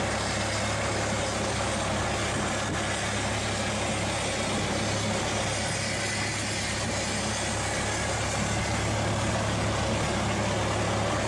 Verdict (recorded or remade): recorded